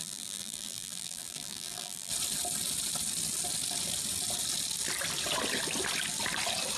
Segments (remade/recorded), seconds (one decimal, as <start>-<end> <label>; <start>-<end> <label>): 0.0-2.1 remade; 2.1-6.8 recorded